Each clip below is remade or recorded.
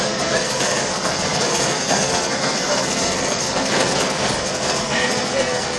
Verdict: remade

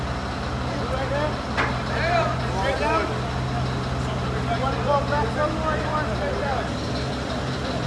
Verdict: recorded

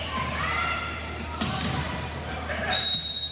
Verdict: recorded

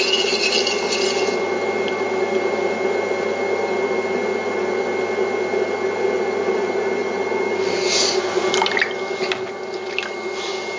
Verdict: recorded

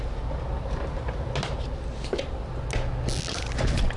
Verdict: recorded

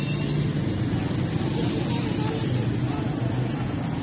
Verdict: recorded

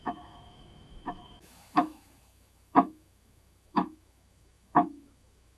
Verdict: remade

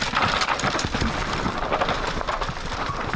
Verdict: remade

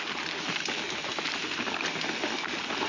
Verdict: recorded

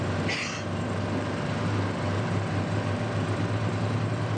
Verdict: remade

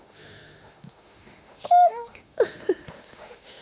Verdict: remade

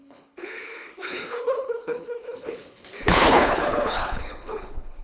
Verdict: remade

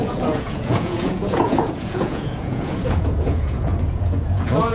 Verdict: remade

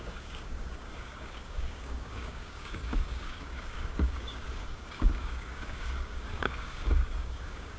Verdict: remade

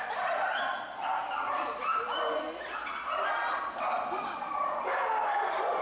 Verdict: recorded